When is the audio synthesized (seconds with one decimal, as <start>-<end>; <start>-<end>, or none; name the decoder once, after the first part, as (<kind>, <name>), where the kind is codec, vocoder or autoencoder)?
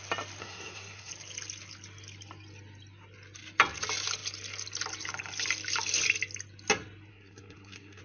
0.4-1.1 (codec, SNAC); 7.1-8.0